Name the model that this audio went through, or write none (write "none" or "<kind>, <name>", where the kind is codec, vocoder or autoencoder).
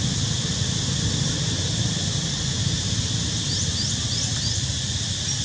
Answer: none